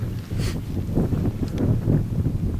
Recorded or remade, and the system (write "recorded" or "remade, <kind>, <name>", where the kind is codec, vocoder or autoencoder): recorded